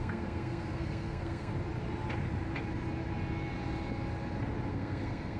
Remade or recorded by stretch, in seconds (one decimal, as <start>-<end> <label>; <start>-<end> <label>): 0.0-1.5 remade; 1.5-4.7 recorded; 4.7-5.4 remade

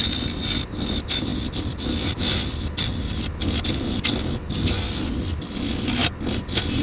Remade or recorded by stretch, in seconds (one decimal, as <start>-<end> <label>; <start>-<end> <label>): 0.0-6.8 recorded

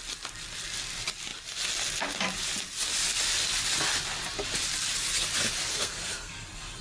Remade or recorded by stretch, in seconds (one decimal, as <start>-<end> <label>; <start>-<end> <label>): 0.0-5.7 recorded; 5.7-6.3 remade; 6.3-6.8 recorded